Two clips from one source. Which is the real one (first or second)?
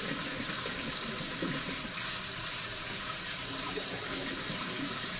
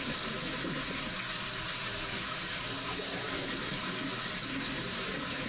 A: second